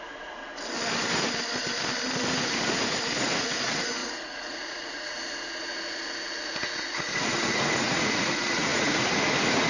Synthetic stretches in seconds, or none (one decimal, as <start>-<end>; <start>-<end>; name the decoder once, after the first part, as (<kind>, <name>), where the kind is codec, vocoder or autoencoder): 0.0-0.4 (vocoder, Vocos); 2.4-9.7